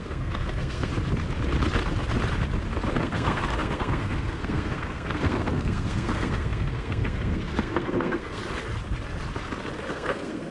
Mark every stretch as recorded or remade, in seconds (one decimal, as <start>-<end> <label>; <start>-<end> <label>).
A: 0.0-0.9 remade; 0.9-2.9 recorded; 2.9-8.4 remade; 8.4-9.9 recorded; 9.9-10.5 remade